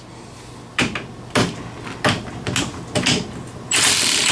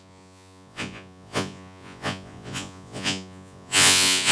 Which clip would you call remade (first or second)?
second